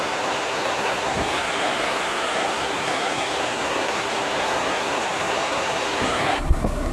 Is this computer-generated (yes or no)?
yes